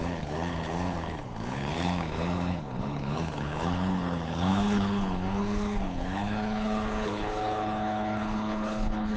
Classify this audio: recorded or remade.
remade